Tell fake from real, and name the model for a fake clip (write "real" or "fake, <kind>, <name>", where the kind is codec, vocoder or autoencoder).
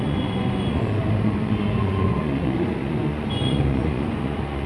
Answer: fake, vocoder, Vocos